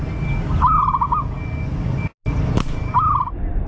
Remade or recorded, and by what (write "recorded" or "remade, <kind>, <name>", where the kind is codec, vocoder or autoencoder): recorded